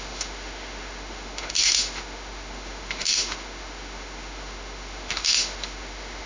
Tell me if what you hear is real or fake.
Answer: fake